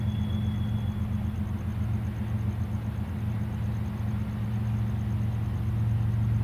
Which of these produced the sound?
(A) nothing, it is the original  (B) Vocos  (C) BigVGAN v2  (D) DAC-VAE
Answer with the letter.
A